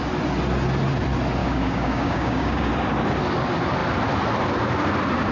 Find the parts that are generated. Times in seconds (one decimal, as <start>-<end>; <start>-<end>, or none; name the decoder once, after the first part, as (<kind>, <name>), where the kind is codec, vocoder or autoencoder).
1.4-2.7 (codec, DAC)